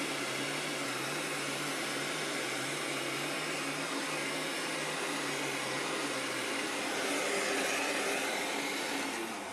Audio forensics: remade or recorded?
recorded